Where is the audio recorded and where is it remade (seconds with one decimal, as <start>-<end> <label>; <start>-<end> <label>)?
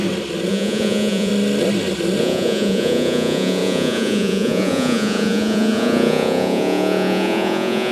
0.0-0.5 recorded; 0.5-1.3 remade; 1.3-2.2 recorded; 2.2-7.9 remade